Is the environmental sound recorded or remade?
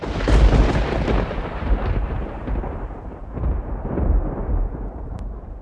remade